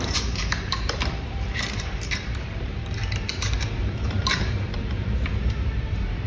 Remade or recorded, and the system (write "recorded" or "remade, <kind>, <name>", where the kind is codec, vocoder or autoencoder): remade, vocoder, BigVGAN v2